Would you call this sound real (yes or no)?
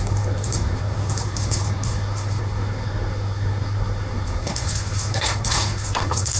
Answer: no